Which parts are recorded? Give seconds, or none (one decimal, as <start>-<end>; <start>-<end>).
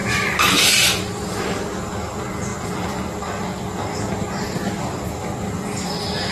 1.8-6.3